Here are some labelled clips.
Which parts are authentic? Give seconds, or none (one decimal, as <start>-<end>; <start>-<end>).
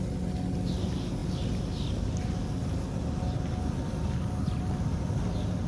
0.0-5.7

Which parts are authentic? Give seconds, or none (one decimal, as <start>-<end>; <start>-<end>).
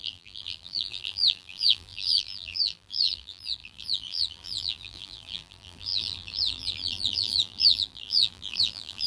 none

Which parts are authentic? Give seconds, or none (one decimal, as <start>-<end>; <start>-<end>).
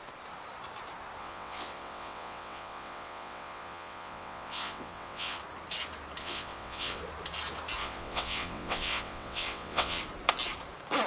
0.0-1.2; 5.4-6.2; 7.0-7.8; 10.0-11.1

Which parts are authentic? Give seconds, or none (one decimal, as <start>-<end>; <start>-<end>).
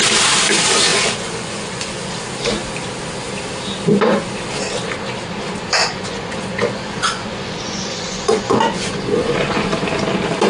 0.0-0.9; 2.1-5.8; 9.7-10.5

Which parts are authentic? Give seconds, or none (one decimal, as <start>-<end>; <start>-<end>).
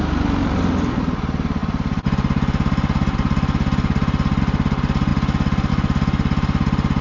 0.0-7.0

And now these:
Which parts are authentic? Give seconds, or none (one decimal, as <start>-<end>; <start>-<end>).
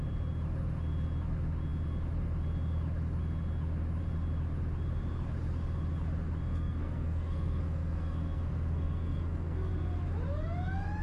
0.0-6.5; 9.7-11.0